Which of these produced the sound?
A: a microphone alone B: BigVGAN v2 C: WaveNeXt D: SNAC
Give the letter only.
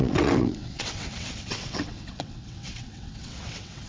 C